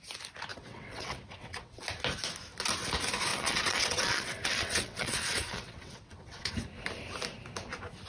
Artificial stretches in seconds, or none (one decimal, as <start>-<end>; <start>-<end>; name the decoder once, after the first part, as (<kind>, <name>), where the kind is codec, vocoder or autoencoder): 0.5-1.8 (vocoder, WaveNeXt); 3.3-6.5

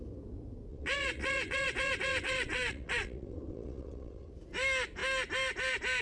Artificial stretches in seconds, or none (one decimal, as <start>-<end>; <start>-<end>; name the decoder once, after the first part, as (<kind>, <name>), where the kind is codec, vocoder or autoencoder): 0.7-4.3 (vocoder, WaveNeXt)

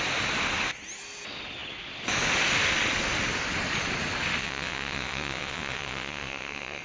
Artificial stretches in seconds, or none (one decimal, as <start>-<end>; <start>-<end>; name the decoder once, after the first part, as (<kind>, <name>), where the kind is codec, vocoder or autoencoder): 4.4-6.8 (vocoder, WaveNeXt)

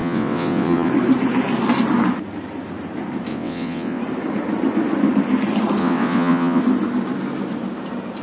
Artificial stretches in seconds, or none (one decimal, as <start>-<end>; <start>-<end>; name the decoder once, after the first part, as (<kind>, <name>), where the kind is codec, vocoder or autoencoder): 0.0-0.9 (vocoder, WaveNeXt); 3.3-4.0; 5.8-6.6

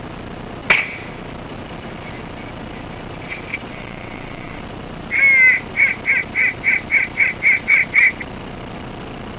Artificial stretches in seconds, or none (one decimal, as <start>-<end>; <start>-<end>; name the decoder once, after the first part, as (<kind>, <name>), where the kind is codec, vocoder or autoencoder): 3.7-4.6 (vocoder, WaveNeXt)

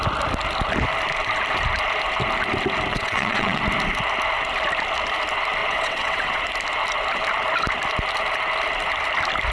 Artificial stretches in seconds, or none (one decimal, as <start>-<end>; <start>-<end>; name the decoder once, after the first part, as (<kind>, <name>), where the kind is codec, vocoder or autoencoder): 2.9-3.6 (vocoder, WaveNeXt); 5.6-6.4

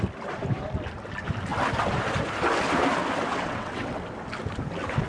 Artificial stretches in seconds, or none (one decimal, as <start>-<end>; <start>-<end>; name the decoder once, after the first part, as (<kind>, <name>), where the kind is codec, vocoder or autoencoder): 3.3-4.0 (vocoder, WaveNeXt)